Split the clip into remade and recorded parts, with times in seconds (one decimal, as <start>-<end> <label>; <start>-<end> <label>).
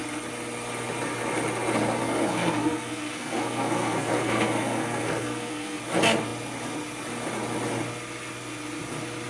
0.0-2.0 recorded; 2.0-5.8 remade; 5.8-9.3 recorded